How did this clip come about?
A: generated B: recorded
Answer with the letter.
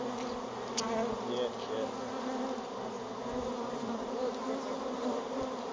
B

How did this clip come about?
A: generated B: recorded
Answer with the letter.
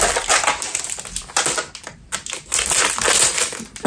B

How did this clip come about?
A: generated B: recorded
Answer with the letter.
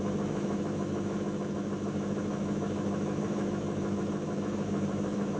A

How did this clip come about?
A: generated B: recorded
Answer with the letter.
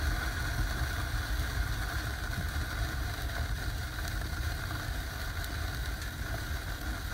B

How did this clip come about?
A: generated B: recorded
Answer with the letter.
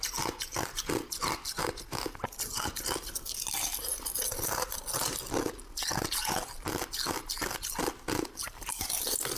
B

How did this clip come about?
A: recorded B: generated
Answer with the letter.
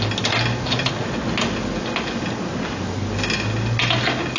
A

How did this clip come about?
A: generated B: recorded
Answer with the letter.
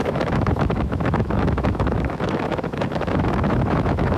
A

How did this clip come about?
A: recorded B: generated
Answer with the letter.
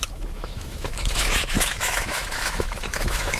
B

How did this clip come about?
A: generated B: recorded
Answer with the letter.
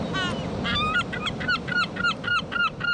B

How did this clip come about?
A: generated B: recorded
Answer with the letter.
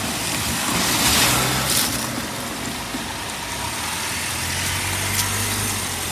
B